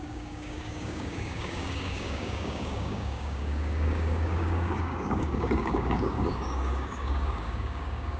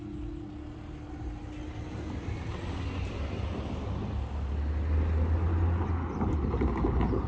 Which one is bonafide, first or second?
second